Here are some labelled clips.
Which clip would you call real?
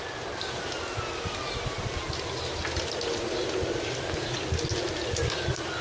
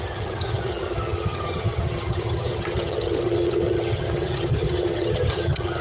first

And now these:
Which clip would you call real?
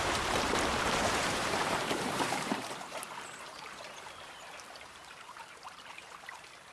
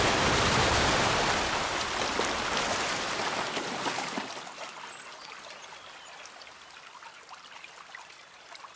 second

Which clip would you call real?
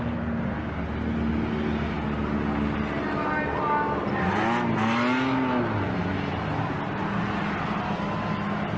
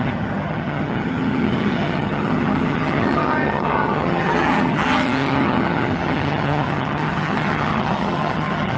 first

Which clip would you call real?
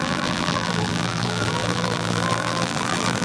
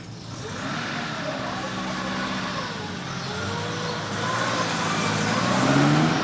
second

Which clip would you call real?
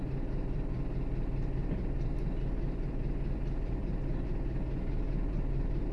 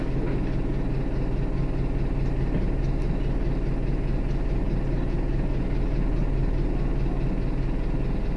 second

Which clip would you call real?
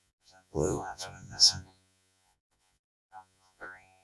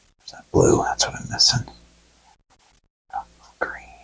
second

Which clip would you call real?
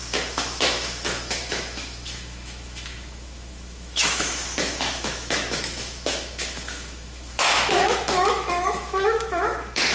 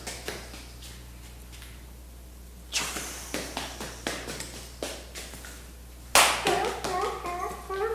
second